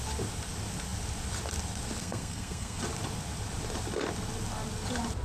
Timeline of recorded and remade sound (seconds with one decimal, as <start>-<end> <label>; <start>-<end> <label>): 0.0-2.0 recorded; 2.0-2.8 remade; 2.8-5.2 recorded